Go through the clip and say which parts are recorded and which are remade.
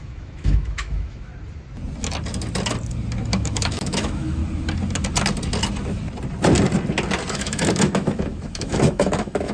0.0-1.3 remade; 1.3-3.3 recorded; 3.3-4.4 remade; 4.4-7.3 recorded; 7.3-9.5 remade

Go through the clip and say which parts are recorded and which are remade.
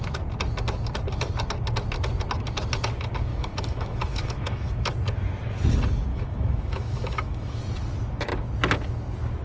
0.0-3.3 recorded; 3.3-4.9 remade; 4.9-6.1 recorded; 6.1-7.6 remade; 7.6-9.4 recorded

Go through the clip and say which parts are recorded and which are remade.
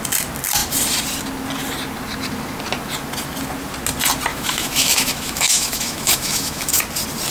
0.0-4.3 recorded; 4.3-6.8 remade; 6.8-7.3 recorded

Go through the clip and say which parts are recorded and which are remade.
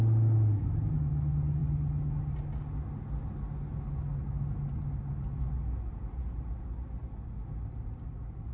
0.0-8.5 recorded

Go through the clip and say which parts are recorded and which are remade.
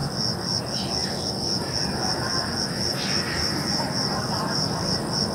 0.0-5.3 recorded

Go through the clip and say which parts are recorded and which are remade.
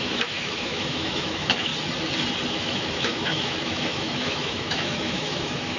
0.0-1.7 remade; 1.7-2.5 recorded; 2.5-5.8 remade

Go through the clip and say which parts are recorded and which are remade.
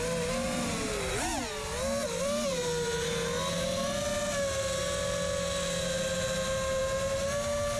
0.0-7.8 recorded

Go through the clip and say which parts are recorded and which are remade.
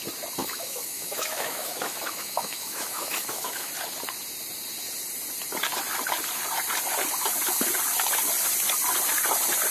0.0-0.4 recorded; 0.4-3.7 remade; 3.7-9.7 recorded